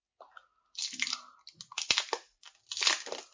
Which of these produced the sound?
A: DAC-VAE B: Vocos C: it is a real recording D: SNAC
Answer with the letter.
C